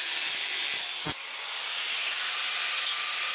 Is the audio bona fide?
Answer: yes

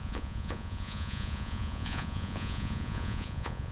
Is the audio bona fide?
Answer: no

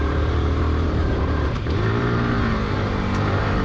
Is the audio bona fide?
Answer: no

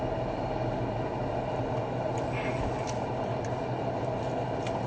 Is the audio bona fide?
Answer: yes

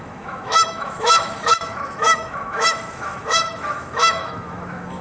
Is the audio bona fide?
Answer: no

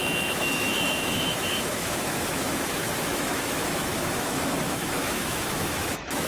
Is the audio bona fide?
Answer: no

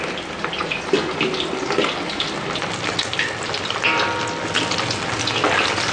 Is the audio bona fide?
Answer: yes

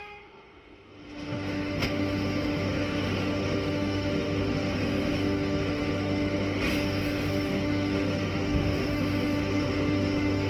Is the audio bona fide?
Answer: no